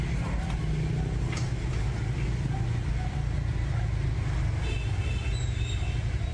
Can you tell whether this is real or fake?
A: real